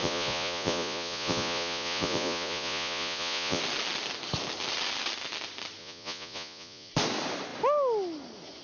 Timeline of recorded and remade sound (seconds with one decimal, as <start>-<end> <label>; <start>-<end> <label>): 0.0-3.6 remade; 3.6-5.8 recorded; 5.8-6.9 remade; 6.9-8.6 recorded